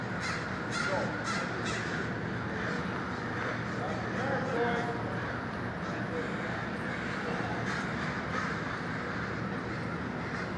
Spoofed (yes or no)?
no